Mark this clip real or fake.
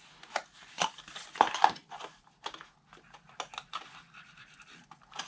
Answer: real